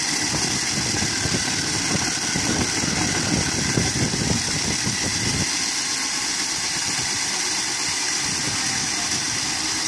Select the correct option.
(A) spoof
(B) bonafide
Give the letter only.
B